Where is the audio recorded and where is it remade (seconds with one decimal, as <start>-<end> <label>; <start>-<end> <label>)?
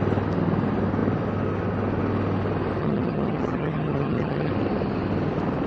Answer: 0.0-2.8 recorded; 2.8-4.5 remade; 4.5-5.7 recorded